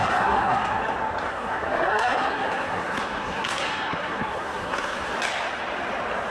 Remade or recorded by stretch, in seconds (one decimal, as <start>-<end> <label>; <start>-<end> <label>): 0.0-0.8 remade; 0.8-1.3 recorded; 1.3-5.1 remade; 5.1-6.3 recorded